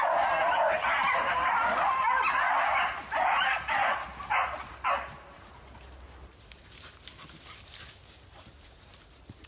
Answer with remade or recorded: recorded